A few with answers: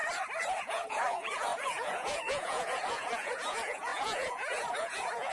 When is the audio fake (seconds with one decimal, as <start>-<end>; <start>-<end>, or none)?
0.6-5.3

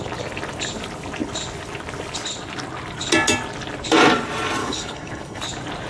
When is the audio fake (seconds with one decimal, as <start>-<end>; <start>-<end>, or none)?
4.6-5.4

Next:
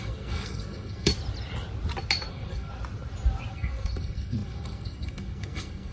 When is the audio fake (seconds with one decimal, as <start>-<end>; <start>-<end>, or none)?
0.0-1.1; 2.3-2.7; 3.5-5.9